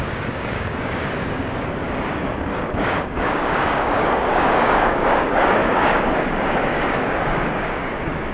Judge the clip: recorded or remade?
remade